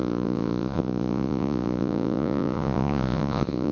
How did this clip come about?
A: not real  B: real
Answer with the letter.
A